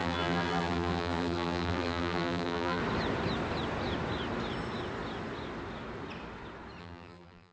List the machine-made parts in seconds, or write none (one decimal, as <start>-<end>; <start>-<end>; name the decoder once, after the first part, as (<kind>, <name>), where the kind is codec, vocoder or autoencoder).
0.0-2.8 (vocoder, BigVGAN v2); 6.8-7.5

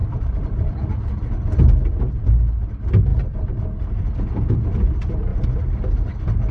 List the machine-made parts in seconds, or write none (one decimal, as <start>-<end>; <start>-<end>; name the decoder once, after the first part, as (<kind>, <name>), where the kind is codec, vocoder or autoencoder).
0.0-1.1 (vocoder, BigVGAN v2); 3.1-3.9

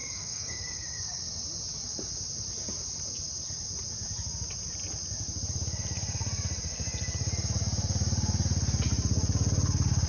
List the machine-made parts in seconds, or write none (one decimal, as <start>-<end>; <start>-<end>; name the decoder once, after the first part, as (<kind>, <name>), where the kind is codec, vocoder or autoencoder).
0.0-1.2 (codec, DAC)